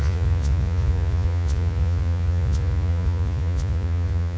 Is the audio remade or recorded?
remade